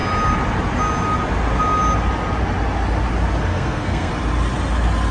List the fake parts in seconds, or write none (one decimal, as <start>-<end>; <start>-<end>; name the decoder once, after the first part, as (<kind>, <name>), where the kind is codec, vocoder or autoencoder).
3.5-4.1 (codec, SNAC)

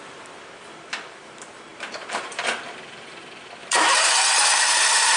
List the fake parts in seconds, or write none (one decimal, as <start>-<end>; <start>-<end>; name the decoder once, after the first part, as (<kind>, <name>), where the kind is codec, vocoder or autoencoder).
1.7-2.6 (vocoder, BigVGAN v2); 3.6-4.8

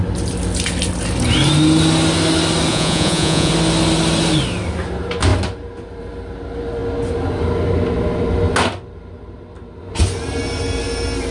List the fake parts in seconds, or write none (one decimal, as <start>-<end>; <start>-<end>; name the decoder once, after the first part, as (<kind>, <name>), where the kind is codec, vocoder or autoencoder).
2.7-3.5 (vocoder, Vocos)

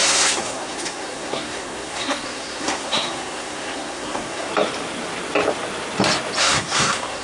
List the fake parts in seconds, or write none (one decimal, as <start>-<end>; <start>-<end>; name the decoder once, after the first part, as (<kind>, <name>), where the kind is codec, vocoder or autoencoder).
0.0-4.5 (codec, SNAC); 6.4-7.2

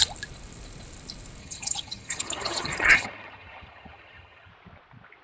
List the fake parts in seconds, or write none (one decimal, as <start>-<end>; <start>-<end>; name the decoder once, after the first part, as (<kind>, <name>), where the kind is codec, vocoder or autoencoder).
1.4-4.5 (vocoder, HiFi-GAN)